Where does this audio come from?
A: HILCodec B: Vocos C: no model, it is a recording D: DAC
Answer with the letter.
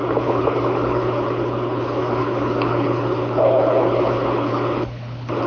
A